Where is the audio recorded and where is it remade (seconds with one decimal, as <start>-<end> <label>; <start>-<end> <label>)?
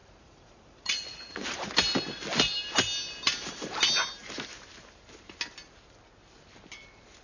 0.0-1.7 remade; 1.7-7.2 recorded